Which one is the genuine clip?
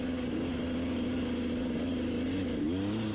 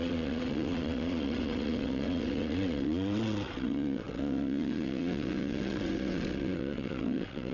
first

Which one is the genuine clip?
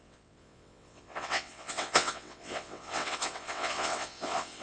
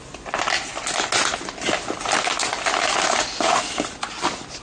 second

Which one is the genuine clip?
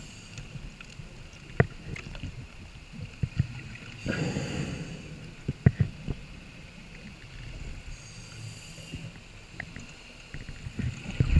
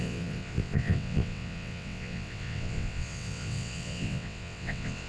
first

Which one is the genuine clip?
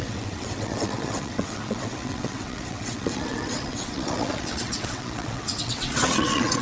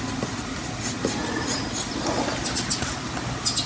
second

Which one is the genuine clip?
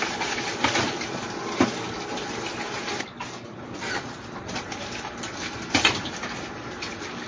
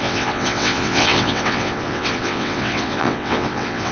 first